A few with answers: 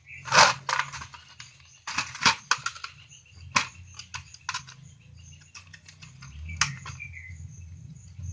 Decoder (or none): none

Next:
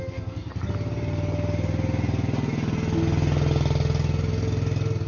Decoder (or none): none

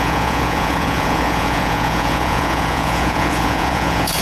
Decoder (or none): vocoder, Vocos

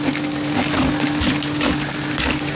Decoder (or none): none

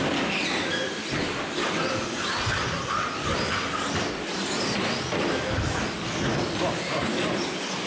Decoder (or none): none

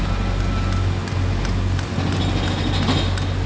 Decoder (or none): none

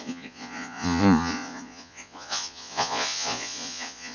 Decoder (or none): vocoder, Vocos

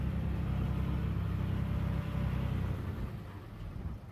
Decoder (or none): none